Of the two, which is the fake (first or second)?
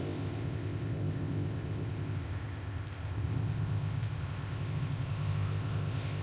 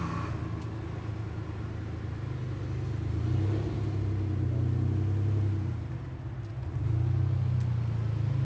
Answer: first